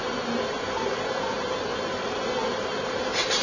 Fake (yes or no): yes